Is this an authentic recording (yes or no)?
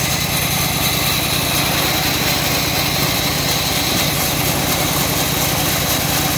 yes